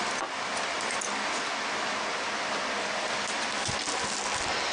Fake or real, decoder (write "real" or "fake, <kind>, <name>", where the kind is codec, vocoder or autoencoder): real